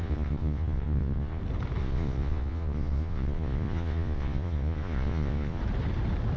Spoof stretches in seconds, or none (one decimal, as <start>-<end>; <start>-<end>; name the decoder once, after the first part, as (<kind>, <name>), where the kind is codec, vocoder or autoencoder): 0.0-1.4 (vocoder, Vocos); 1.8-5.6